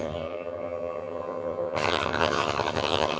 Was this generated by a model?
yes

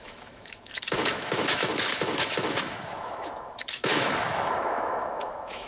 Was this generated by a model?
yes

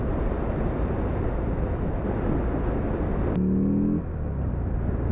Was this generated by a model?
no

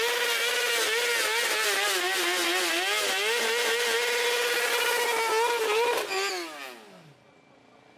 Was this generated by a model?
no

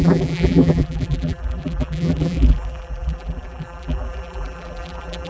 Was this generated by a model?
yes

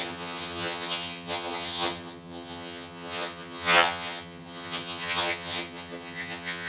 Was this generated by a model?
yes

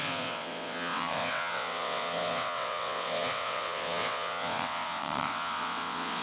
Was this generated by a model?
yes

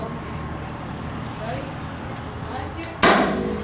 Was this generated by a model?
no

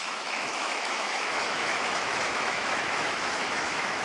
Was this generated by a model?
yes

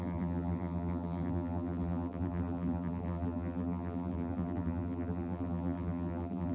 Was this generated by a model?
yes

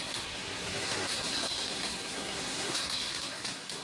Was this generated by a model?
yes